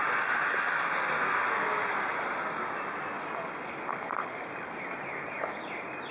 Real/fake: real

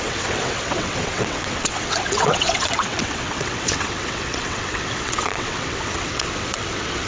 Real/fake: fake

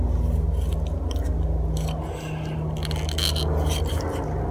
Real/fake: real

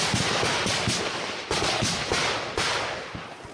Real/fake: real